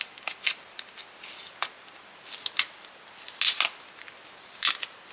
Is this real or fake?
real